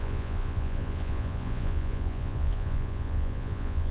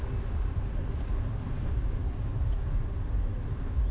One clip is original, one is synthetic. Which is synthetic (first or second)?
first